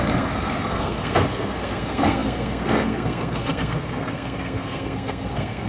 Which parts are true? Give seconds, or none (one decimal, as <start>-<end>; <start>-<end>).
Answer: none